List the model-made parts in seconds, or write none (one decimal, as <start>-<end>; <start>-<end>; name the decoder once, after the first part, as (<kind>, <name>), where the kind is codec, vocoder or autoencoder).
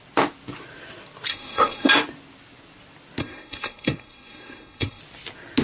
1.3-1.9 (codec, SNAC); 3.2-5.0